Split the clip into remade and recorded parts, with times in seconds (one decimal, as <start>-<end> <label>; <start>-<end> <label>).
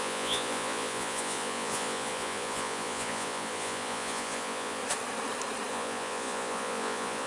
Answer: 0.0-4.8 remade; 4.8-5.7 recorded; 5.7-7.3 remade